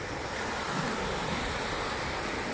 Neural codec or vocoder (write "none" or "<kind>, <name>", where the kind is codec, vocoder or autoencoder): none